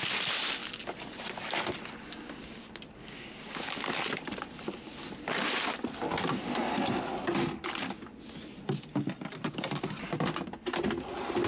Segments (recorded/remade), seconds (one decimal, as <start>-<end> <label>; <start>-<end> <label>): 0.0-3.0 recorded; 3.0-3.7 remade; 3.7-11.5 recorded